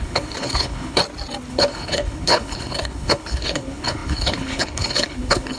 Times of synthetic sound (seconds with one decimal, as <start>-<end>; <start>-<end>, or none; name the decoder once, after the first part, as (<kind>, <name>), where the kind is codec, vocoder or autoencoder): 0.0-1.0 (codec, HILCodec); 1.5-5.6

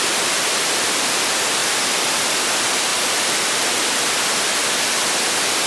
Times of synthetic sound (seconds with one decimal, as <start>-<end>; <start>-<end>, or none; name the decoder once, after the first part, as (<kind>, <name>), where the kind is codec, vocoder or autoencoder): none

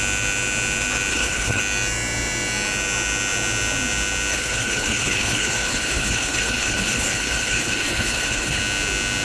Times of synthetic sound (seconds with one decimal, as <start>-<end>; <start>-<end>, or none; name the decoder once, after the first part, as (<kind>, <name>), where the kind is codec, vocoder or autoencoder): 1.1-1.6 (codec, HILCodec); 4.3-8.6